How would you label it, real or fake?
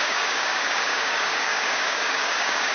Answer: fake